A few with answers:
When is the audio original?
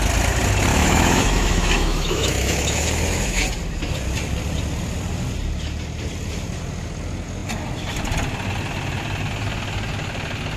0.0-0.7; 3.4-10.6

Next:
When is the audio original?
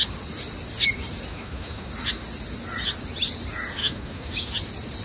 0.0-1.3; 1.9-3.8; 4.5-5.0